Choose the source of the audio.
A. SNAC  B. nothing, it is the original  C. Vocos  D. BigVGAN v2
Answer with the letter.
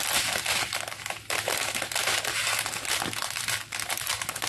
B